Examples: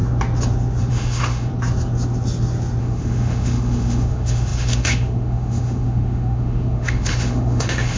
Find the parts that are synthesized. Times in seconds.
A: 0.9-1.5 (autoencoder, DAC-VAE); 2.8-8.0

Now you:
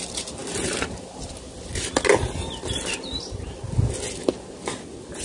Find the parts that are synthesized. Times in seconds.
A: none

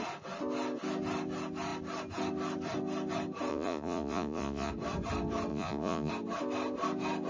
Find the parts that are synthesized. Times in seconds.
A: 3.5-4.7 (vocoder, Vocos); 5.5-6.1

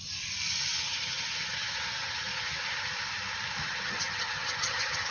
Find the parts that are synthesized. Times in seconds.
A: 0.7-2.8 (vocoder, HiFi-GAN); 3.6-5.1

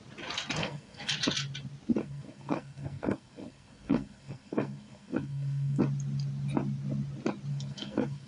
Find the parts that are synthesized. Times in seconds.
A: 0.6-1.1 (codec, SNAC); 2.0-5.8; 7.5-8.3

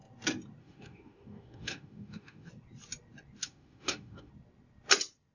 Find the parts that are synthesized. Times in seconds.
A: 0.6-2.5 (autoencoder, DAC-VAE); 3.4-4.3

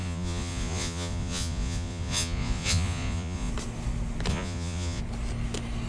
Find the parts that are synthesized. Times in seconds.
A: 0.0-3.5 (vocoder, Vocos); 4.3-5.0

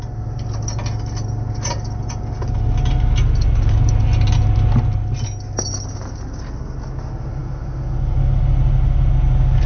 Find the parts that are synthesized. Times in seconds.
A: none